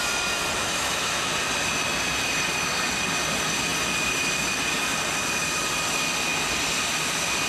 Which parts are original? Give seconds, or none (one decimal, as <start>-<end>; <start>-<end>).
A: 0.0-0.6; 1.3-7.5